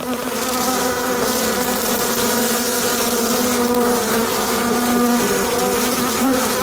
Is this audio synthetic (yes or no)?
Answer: no